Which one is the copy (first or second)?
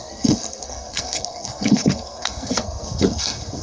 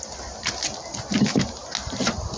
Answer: first